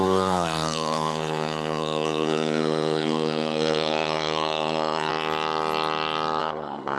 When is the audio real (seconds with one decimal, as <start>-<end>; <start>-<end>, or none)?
5.1-6.4